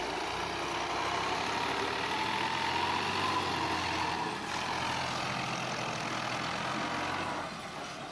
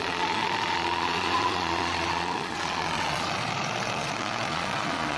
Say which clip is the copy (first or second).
second